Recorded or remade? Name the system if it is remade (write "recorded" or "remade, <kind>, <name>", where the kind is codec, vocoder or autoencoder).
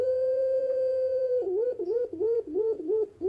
remade, vocoder, Vocos